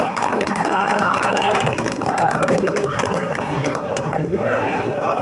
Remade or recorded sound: remade